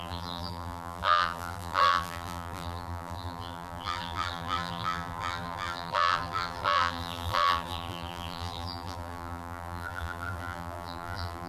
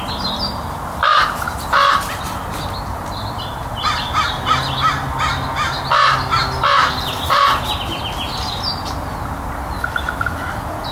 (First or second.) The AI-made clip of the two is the first